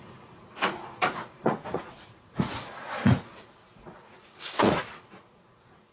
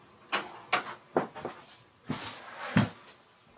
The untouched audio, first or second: second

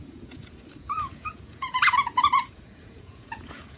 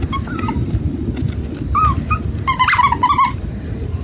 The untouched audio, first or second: second